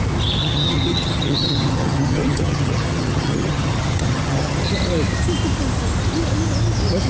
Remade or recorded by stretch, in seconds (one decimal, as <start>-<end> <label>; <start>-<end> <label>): 0.0-0.4 recorded; 0.4-4.7 remade; 4.7-7.1 recorded